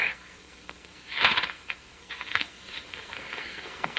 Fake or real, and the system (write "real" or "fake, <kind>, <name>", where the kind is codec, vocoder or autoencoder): fake, codec, SNAC